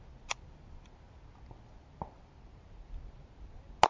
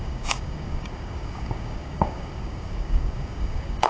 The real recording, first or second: first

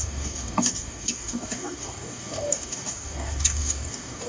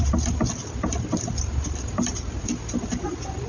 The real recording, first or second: second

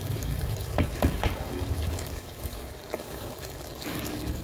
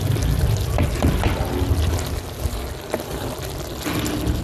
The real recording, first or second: second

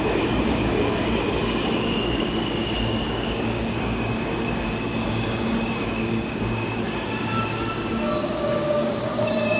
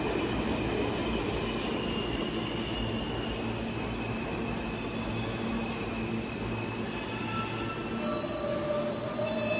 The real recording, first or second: second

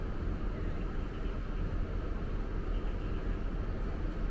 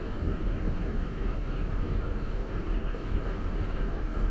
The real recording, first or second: first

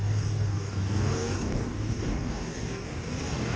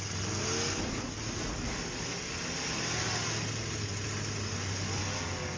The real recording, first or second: second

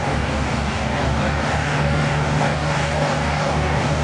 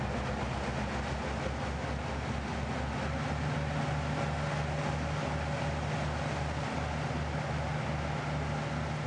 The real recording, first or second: second